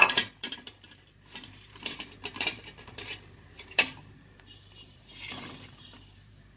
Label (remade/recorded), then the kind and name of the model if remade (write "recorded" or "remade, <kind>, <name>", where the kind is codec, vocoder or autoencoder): remade, vocoder, BigVGAN v2